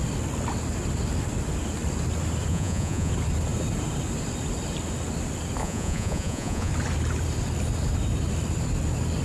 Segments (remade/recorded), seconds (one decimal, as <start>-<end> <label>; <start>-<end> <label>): 0.0-2.5 recorded; 2.5-3.1 remade; 3.1-5.6 recorded; 5.6-6.7 remade; 6.7-9.2 recorded